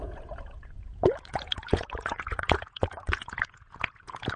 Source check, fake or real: fake